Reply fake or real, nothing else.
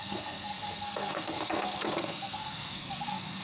fake